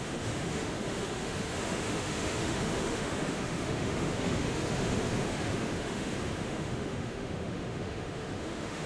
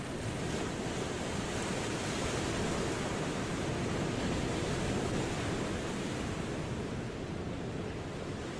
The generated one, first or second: first